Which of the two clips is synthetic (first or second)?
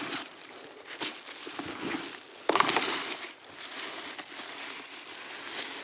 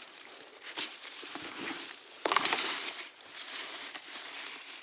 second